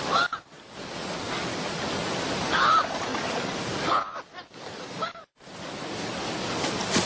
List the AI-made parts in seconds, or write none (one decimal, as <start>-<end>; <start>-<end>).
none